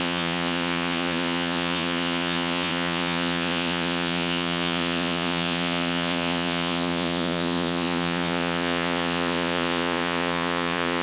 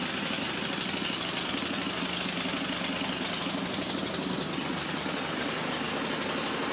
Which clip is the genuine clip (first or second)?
second